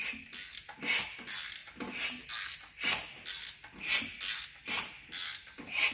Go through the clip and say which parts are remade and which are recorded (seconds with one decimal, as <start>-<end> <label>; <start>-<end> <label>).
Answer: 0.0-5.9 recorded